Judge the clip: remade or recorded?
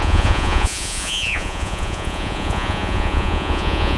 remade